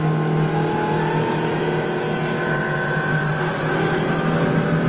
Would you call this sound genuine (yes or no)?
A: yes